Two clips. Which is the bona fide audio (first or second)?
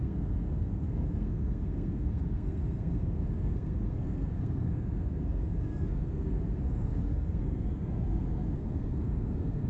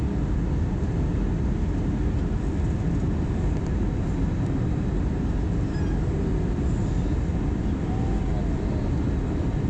second